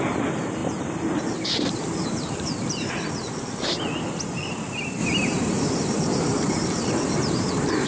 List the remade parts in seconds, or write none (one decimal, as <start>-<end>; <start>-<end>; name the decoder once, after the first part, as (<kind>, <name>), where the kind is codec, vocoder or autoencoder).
0.6-2.9 (vocoder, BigVGAN v2); 5.0-7.9